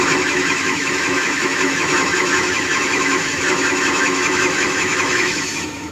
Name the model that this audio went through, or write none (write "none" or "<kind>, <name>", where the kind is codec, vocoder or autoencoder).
autoencoder, DAC-VAE